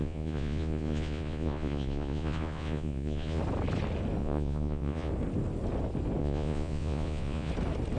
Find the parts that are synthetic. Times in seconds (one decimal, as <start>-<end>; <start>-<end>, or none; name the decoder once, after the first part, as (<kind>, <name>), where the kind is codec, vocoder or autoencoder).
0.0-3.4 (vocoder, Vocos); 4.2-5.1; 6.2-7.5